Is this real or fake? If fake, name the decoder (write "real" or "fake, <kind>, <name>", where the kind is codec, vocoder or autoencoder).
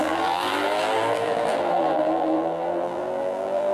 fake, vocoder, BigVGAN v2